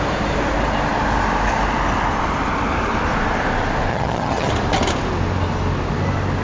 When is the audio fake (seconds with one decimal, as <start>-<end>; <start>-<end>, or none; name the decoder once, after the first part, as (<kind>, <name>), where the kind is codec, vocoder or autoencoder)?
3.9-4.5 (vocoder, HiFi-GAN)

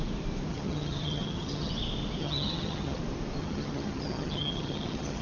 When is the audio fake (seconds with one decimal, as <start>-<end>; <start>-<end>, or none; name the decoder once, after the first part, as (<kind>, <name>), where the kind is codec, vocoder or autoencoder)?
0.5-1.7 (vocoder, HiFi-GAN); 2.2-3.0; 3.4-5.2